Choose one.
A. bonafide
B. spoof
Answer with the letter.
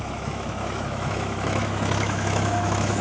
B